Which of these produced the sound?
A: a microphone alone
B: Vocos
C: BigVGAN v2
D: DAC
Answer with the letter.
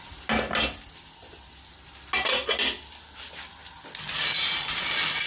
A